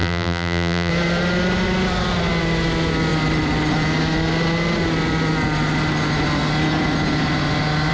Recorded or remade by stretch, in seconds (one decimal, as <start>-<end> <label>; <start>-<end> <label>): 0.0-0.9 remade; 0.9-7.9 recorded